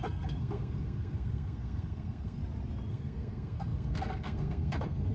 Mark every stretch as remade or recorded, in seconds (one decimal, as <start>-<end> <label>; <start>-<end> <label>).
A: 0.0-2.4 remade; 2.4-2.9 recorded; 2.9-5.1 remade